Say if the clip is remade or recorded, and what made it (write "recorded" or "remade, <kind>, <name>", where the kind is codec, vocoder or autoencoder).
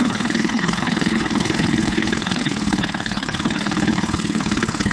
remade, codec, HILCodec